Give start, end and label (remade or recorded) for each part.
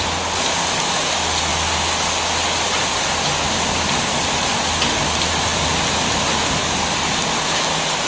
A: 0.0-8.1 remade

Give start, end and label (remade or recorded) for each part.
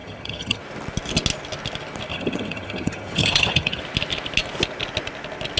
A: 0.0-0.6 remade; 0.6-2.1 recorded; 2.1-3.8 remade; 3.8-5.6 recorded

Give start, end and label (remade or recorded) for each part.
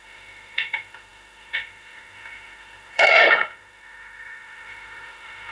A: 0.0-5.5 remade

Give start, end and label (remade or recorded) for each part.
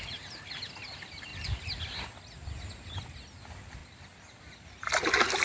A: 0.0-5.4 recorded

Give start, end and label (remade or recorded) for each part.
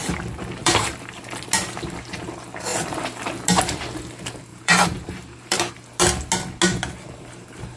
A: 0.0-0.6 recorded; 0.6-1.2 remade; 1.2-2.7 recorded; 2.7-3.3 remade; 3.3-4.5 recorded; 4.5-5.7 remade; 5.7-7.8 recorded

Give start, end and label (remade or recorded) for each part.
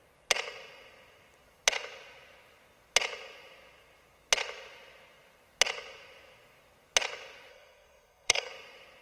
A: 0.0-7.5 recorded; 7.5-8.5 remade; 8.5-9.0 recorded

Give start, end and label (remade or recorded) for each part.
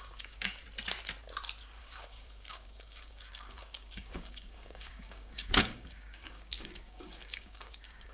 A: 0.0-0.6 remade; 0.6-1.8 recorded; 1.8-8.1 remade